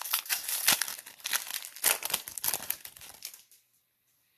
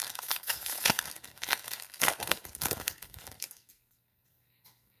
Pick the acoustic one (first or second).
first